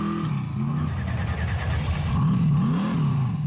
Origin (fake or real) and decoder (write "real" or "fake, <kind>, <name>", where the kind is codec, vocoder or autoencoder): real